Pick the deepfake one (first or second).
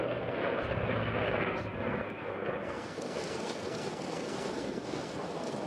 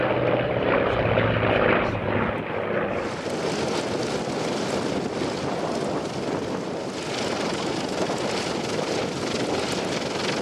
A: first